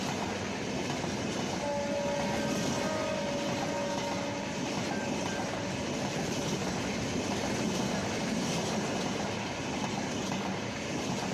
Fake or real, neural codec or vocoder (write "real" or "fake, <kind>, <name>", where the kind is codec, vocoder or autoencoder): real